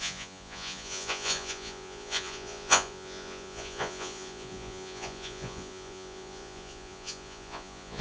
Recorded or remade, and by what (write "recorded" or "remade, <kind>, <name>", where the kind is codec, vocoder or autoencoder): remade, vocoder, Vocos